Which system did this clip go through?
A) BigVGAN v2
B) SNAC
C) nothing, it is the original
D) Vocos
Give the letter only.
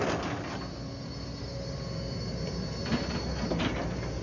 C